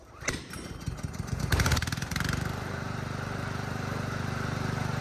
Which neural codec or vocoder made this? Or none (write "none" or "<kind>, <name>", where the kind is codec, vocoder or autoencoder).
vocoder, BigVGAN v2